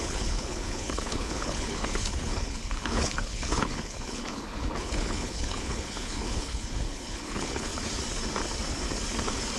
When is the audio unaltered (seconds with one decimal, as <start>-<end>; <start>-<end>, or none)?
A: 7.7-9.6